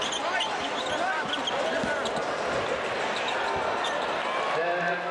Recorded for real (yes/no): yes